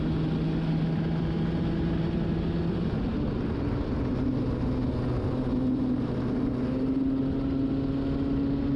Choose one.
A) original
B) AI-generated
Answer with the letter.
A